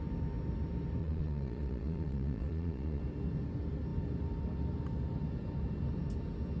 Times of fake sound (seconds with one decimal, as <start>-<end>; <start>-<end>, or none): 1.0-3.0